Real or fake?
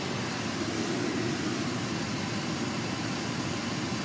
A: real